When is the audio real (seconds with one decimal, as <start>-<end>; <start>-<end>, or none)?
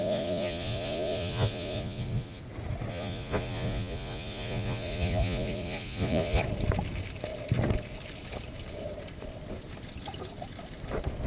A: 2.4-2.9; 6.4-11.3